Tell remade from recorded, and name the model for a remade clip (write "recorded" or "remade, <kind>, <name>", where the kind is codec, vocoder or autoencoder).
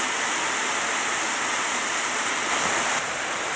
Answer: recorded